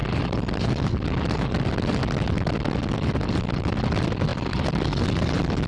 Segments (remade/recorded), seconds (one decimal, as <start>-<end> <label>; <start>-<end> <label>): 0.0-5.7 recorded